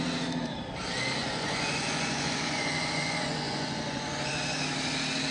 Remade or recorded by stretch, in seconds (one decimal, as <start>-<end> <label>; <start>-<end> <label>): 0.0-1.2 recorded; 1.2-4.3 remade; 4.3-5.3 recorded